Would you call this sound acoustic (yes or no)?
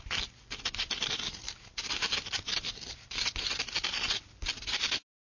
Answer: yes